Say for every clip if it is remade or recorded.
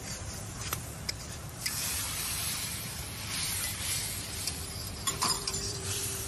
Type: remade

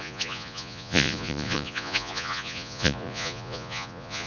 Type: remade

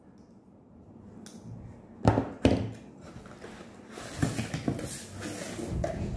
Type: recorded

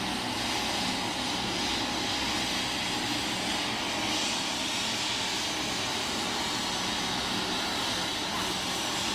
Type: recorded